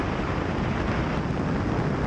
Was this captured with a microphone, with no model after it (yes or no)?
yes